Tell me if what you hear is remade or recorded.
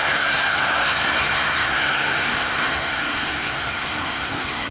remade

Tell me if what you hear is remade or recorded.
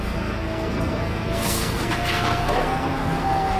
remade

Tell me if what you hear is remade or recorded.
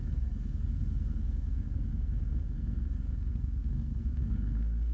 remade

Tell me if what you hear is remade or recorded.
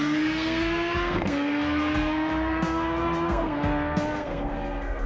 remade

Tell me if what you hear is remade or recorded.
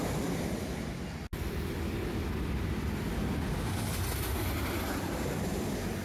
recorded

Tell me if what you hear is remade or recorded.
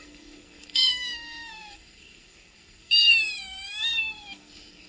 remade